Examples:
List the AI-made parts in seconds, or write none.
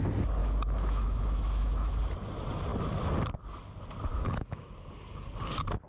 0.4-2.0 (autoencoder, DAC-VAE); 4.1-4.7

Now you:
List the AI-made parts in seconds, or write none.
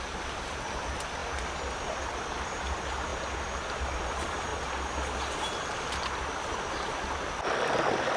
none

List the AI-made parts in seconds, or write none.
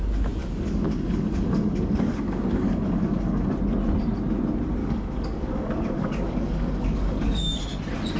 0.4-3.5 (codec, DAC); 4.8-7.6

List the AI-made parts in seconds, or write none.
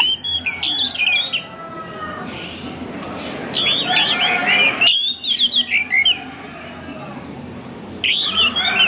none